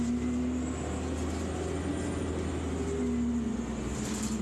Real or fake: real